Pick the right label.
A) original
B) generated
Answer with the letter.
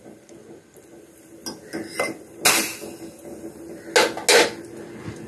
A